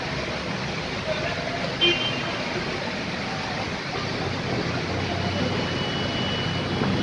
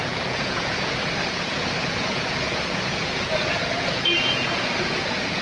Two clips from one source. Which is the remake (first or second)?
second